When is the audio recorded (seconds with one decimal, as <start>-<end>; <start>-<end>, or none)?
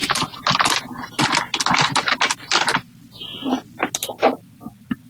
0.0-5.1